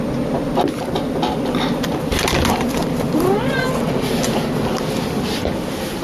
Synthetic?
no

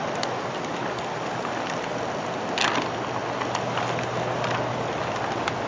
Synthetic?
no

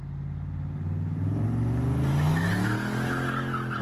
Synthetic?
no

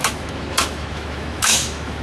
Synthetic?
yes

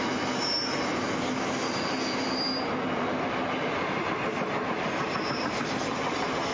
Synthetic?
no